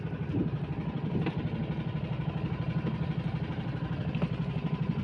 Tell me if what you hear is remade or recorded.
recorded